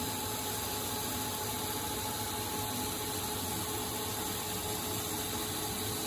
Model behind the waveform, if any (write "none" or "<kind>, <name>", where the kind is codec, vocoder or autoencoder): none